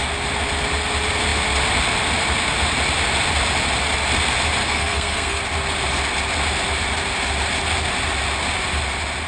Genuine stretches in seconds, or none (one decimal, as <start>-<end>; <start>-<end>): 0.0-4.6; 5.4-9.3